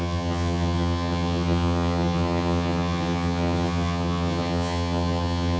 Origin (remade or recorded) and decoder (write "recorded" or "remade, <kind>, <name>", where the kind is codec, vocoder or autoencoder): remade, vocoder, HiFi-GAN